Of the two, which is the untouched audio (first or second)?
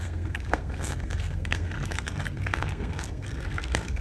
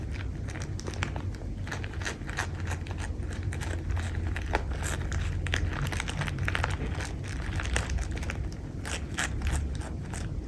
second